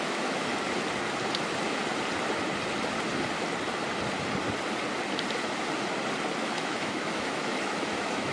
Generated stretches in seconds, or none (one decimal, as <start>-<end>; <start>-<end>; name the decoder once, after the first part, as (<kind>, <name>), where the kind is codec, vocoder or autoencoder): 0.0-0.5 (autoencoder, DAC-VAE); 1.3-1.8; 6.4-8.3